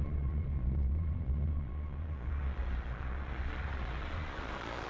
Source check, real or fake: fake